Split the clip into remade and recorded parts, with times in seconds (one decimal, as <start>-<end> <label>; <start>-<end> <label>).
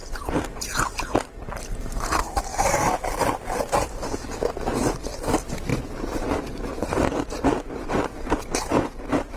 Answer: 0.0-5.7 remade; 5.7-9.4 recorded